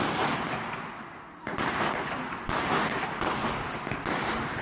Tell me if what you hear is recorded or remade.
recorded